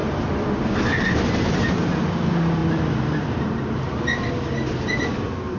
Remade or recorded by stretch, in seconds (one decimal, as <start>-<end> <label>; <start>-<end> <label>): 0.0-0.5 remade; 0.5-2.6 recorded; 2.6-3.6 remade; 3.6-5.6 recorded